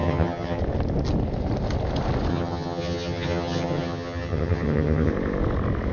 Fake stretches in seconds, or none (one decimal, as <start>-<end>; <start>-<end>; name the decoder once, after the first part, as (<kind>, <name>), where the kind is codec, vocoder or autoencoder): 0.0-0.6 (vocoder, HiFi-GAN); 2.3-5.1